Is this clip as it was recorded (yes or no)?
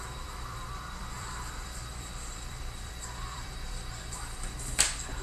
no